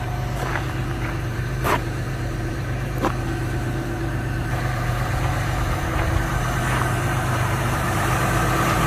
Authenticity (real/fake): fake